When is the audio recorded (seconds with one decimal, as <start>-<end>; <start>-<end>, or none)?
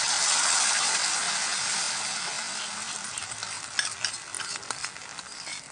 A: 0.0-5.7